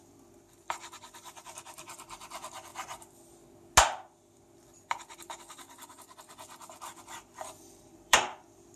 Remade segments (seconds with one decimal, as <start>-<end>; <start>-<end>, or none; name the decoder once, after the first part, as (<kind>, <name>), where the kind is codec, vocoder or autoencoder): 0.0-2.7 (vocoder, BigVGAN v2); 7.0-8.8